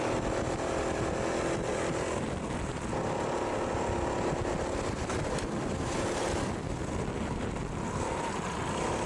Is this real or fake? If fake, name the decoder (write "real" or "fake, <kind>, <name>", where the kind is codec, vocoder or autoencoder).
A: real